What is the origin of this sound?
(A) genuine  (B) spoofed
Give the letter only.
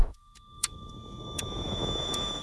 B